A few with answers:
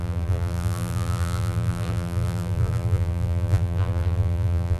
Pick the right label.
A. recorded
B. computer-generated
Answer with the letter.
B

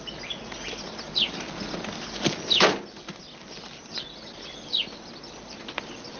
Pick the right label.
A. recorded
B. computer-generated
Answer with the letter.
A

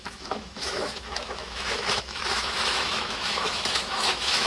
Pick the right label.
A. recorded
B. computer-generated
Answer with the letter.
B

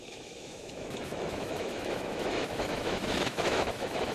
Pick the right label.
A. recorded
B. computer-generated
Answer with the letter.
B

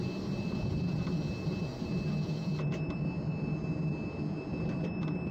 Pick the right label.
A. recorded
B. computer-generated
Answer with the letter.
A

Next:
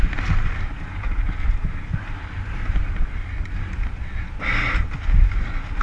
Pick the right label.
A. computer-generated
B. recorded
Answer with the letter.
B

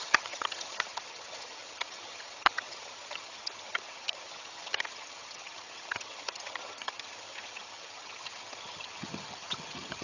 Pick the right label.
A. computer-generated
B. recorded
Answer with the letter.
A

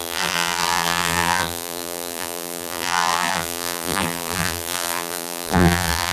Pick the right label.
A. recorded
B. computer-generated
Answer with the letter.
B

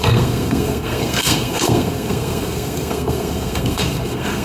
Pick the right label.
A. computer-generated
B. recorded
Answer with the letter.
A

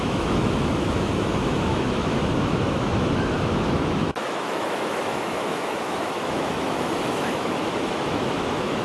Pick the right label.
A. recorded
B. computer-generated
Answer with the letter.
B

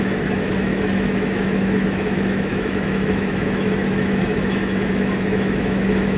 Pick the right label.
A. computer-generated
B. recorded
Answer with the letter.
A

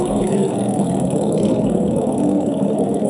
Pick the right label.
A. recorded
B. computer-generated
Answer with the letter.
B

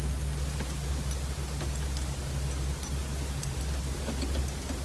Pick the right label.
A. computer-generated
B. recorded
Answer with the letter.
B